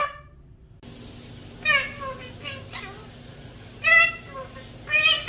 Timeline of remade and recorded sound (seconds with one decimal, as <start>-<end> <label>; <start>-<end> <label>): 0.0-5.3 recorded